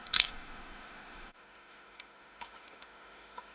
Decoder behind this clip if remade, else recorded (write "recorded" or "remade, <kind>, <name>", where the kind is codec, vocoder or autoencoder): remade, autoencoder, DAC-VAE